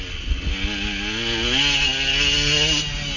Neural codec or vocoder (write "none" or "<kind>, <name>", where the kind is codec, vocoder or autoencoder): none